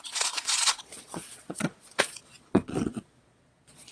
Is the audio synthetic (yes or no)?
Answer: yes